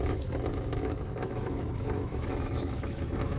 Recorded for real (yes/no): no